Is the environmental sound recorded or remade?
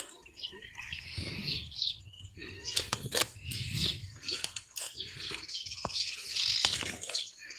remade